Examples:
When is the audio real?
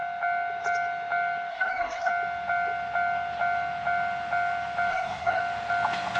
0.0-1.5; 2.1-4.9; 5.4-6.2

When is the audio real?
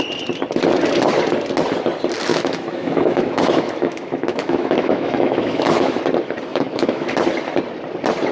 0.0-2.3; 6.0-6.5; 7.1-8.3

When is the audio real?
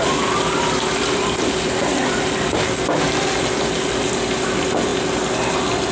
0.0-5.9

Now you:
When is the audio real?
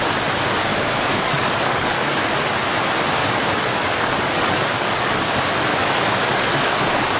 0.0-0.7; 2.2-3.2; 5.3-5.7; 6.8-7.2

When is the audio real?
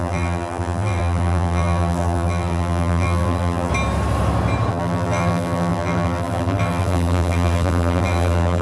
3.7-4.7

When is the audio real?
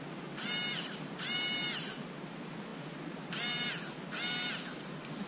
0.0-5.3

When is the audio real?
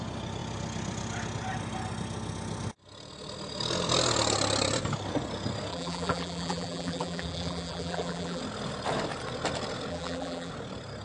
0.0-5.7; 8.4-9.9; 10.5-11.0